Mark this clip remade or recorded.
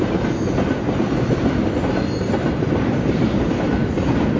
recorded